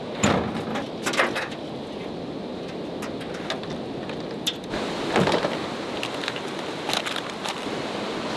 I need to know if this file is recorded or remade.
recorded